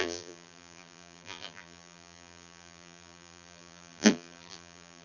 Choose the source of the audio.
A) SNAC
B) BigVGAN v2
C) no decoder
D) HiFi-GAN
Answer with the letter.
B